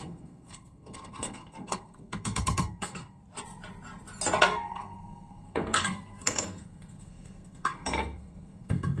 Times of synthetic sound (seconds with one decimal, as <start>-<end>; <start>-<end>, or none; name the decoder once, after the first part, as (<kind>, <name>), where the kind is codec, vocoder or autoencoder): 0.0-3.2 (codec, SNAC); 4.4-9.0